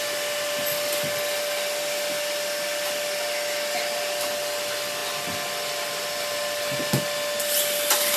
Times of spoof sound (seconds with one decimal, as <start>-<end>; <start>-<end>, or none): none